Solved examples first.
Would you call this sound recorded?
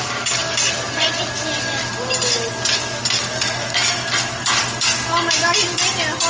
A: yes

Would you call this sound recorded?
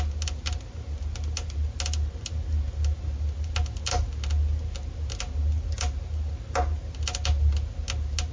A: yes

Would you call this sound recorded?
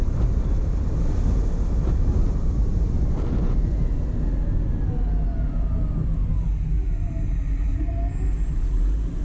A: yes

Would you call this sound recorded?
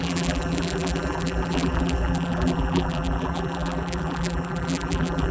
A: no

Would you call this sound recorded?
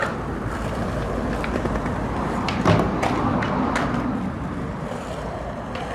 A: no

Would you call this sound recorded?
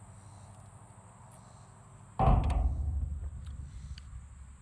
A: yes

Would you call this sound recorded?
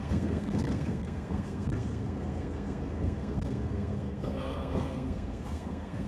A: no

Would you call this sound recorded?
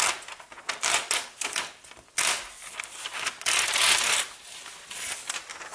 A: yes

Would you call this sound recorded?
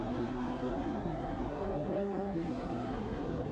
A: no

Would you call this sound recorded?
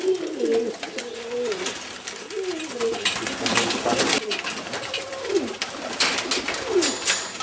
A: yes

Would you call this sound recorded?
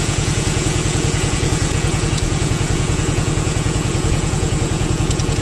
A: no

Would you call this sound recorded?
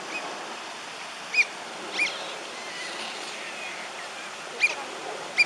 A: yes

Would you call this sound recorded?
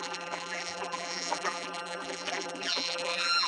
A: no